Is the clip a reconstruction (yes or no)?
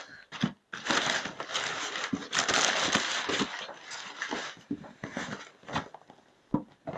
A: no